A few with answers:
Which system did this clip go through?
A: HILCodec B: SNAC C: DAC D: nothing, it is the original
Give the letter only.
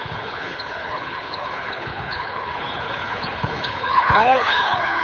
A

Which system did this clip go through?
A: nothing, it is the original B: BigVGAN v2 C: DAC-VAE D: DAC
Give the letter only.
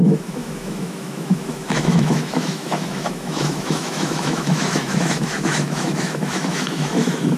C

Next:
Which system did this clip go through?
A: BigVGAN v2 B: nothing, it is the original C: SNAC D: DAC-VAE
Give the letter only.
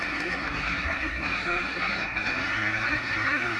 C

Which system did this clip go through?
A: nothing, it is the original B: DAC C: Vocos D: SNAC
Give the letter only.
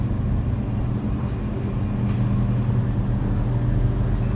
A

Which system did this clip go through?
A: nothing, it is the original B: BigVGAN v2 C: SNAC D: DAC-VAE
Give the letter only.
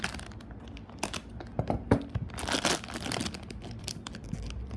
A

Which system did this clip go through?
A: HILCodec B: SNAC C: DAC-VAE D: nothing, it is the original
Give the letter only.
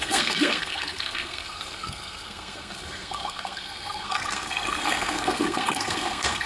B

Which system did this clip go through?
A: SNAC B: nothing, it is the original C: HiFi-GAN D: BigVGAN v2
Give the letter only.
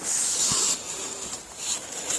B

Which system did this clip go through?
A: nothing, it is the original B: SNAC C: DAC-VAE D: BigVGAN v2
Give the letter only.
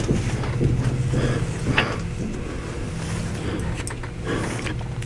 A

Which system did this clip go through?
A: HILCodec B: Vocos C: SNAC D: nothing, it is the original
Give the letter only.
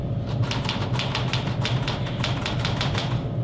D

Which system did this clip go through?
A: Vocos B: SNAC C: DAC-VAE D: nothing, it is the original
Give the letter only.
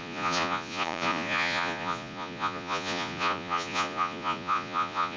A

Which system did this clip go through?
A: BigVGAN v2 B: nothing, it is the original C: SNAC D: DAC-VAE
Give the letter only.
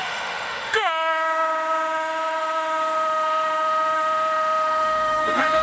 D